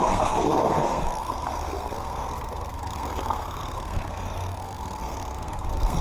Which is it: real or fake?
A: fake